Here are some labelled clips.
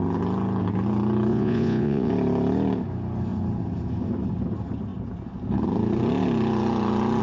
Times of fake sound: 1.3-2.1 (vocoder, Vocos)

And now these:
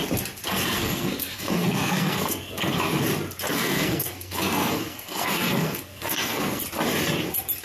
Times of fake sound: 0.4-2.8 (codec, SNAC); 3.5-6.6